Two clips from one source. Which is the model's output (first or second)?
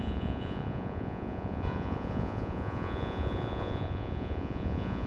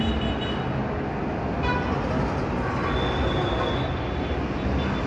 first